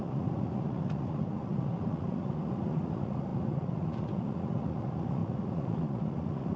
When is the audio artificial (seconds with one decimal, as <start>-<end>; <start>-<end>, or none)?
0.0-6.6